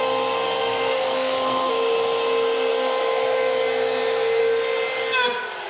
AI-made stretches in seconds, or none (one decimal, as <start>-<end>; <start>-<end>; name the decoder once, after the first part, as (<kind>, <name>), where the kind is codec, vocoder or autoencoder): 0.6-1.7 (codec, SNAC)